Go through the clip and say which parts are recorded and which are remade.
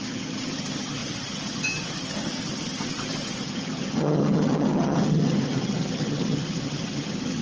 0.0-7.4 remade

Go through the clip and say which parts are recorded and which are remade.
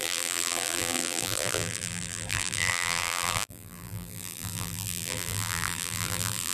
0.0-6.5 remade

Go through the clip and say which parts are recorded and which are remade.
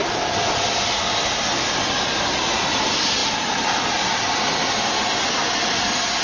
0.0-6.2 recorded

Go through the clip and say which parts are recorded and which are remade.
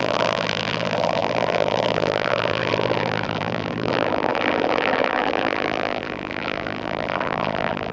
0.0-7.9 remade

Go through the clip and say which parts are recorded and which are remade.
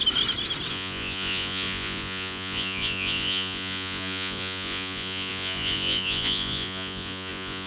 0.0-0.7 recorded; 0.7-7.7 remade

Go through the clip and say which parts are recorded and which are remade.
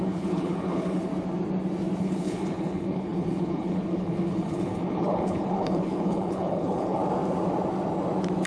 0.0-1.1 remade; 1.1-2.0 recorded; 2.0-7.0 remade; 7.0-8.5 recorded